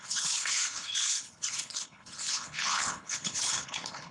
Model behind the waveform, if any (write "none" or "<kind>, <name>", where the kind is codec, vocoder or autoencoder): codec, HILCodec